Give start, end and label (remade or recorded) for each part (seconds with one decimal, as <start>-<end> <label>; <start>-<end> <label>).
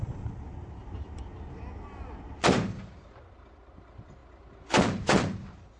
0.0-0.8 recorded; 0.8-3.1 remade; 3.1-5.8 recorded